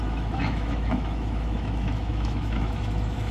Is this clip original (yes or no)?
no